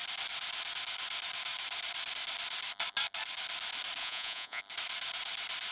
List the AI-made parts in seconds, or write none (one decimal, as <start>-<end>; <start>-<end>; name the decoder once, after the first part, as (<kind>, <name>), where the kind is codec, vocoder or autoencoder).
4.0-4.6 (vocoder, Vocos)